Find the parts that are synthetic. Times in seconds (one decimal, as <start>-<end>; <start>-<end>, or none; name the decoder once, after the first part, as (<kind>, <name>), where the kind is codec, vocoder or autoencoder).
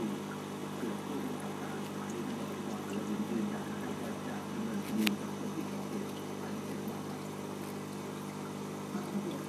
none